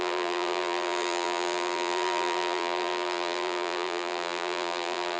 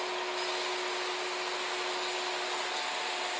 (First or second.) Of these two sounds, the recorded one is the second